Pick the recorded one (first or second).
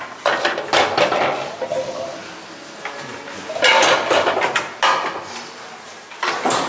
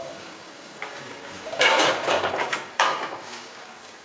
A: first